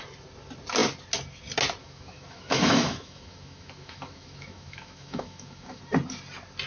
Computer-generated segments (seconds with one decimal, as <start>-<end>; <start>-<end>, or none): 1.8-5.8